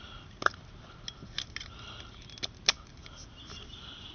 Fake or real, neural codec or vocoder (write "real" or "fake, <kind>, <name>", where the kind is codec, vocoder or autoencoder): real